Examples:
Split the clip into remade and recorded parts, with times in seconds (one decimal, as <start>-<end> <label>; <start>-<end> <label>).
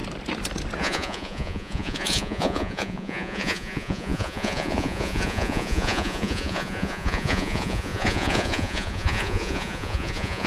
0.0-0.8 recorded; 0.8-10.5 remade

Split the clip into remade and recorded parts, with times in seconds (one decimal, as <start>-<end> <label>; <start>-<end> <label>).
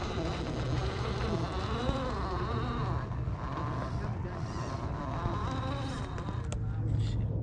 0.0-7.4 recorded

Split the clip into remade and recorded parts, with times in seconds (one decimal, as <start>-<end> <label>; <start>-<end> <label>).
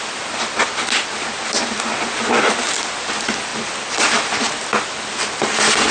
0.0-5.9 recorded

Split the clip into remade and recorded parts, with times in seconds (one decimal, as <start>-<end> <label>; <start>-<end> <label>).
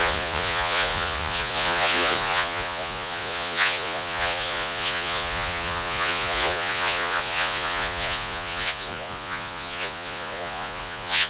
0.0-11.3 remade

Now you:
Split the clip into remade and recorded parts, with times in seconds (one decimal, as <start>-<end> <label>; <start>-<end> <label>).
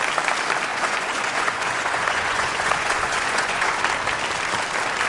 0.0-0.7 recorded; 0.7-3.8 remade; 3.8-5.1 recorded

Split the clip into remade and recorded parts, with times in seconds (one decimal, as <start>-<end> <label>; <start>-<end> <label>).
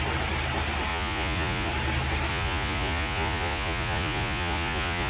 0.0-0.9 recorded; 0.9-1.7 remade; 1.7-2.3 recorded; 2.3-5.1 remade